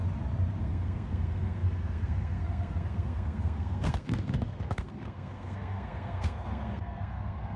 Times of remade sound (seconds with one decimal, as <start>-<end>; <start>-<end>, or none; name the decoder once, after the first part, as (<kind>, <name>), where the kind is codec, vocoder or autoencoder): 0.6-7.6 (codec, SNAC)